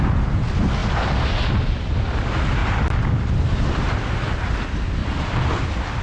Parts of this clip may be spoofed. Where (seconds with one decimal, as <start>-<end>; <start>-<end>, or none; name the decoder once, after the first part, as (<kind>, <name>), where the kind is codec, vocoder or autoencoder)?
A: 2.6-4.1 (vocoder, BigVGAN v2); 5.0-6.0